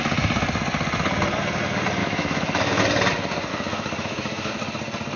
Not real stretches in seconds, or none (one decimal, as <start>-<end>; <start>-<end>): 2.0-2.8; 3.5-4.5